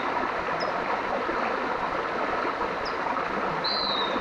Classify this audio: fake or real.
real